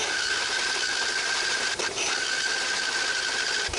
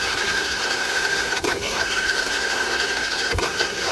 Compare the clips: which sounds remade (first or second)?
second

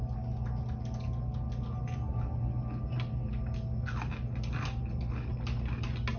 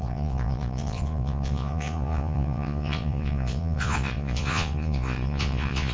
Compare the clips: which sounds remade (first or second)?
second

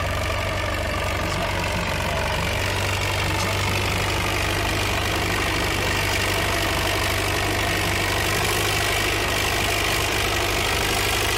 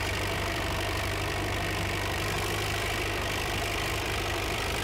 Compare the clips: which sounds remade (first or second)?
second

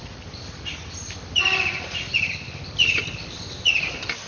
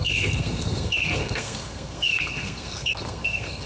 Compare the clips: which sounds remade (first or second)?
second